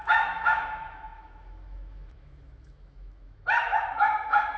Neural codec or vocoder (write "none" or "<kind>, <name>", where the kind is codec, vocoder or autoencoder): autoencoder, DAC-VAE